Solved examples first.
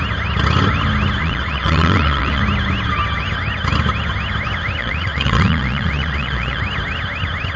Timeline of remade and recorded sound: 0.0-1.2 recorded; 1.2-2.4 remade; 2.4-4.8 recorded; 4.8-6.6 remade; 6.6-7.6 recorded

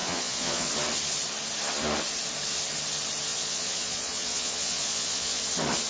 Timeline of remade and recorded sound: 0.0-0.7 remade; 0.7-3.3 recorded; 3.3-5.4 remade; 5.4-5.9 recorded

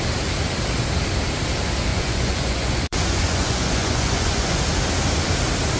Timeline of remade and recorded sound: 0.0-1.9 recorded; 1.9-4.6 remade; 4.6-5.8 recorded

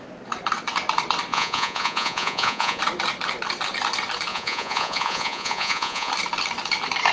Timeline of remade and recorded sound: 0.0-1.3 recorded; 1.3-2.8 remade; 2.8-4.3 recorded; 4.3-6.1 remade; 6.1-7.1 recorded